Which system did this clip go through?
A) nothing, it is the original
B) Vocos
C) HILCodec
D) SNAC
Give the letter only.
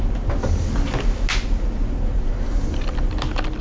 A